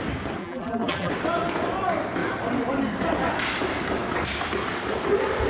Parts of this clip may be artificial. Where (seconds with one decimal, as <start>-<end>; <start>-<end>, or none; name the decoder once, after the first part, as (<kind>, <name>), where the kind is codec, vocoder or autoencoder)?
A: 0.4-1.1 (vocoder, BigVGAN v2)